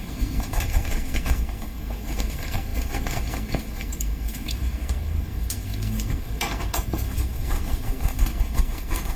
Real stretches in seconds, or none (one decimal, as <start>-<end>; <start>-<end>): none

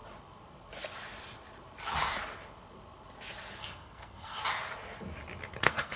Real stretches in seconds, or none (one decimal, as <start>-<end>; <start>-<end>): 0.0-3.6; 4.4-5.6

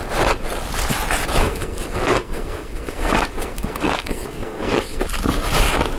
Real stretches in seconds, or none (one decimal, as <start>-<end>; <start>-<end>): 0.0-1.4; 5.0-6.0

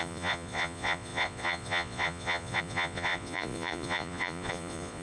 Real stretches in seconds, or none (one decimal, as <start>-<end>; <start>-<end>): none

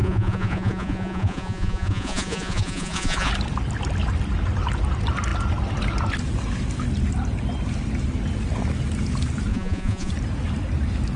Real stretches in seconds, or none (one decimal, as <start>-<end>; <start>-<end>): 3.3-9.5; 10.1-11.2

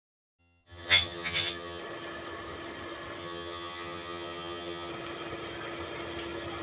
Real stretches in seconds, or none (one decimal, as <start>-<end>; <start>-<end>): 0.0-0.4; 1.8-3.2; 4.9-6.6